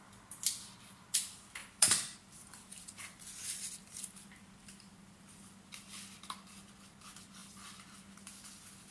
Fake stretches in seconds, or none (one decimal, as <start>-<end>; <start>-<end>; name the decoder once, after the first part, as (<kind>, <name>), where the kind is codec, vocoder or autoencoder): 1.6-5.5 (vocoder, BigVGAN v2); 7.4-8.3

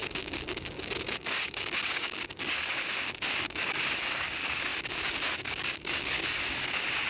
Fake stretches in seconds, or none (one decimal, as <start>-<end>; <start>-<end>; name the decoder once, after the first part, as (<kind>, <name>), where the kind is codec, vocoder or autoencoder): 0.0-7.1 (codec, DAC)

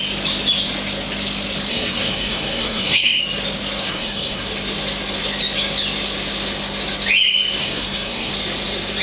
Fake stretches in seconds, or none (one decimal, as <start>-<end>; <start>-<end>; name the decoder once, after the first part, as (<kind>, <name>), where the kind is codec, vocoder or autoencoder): 1.7-3.2 (codec, SNAC); 3.8-4.5; 7.6-8.3

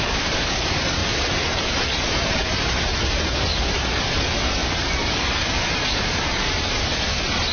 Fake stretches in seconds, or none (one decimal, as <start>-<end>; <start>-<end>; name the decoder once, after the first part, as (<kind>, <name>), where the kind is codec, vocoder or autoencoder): 0.0-4.6 (vocoder, BigVGAN v2); 5.2-7.5

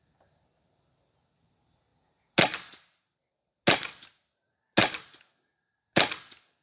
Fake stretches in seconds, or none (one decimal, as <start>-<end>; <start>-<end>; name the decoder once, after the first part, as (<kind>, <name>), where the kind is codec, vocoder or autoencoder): none

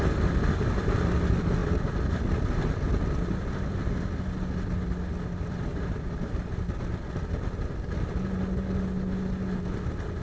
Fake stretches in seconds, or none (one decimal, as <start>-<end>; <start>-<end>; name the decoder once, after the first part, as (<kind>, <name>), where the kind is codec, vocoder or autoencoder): none

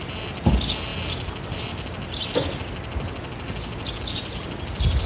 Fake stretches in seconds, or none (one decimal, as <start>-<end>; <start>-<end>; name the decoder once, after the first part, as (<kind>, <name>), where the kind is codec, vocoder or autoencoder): none

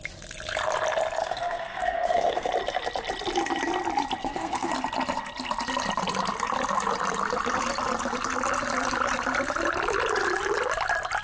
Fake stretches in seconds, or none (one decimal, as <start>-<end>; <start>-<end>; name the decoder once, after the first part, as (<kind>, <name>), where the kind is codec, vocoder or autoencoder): 1.2-2.5 (codec, SNAC); 4.2-4.7